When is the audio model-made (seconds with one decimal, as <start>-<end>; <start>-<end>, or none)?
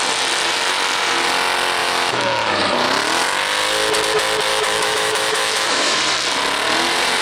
1.8-2.6; 4.5-6.0